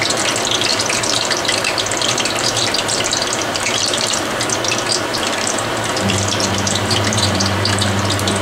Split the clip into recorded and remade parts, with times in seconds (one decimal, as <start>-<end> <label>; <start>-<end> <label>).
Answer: 0.0-0.7 recorded; 0.7-4.4 remade; 4.4-5.1 recorded; 5.1-8.4 remade